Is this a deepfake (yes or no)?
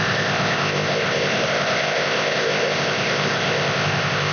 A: yes